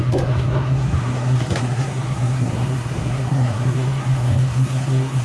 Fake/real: fake